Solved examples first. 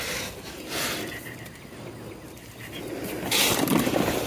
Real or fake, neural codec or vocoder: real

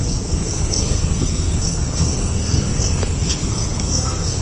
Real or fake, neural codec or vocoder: fake, codec, SNAC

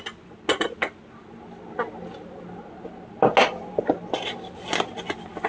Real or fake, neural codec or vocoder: real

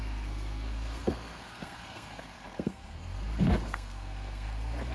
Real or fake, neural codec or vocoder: fake, codec, SNAC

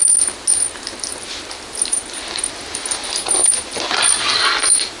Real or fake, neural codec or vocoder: real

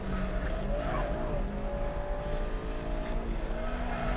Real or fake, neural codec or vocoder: real